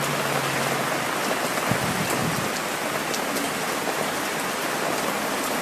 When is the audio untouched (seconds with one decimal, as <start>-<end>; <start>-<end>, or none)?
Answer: 0.0-5.6